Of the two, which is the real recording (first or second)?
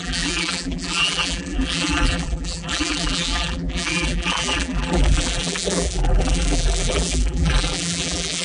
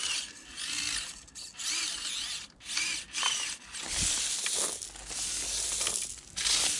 second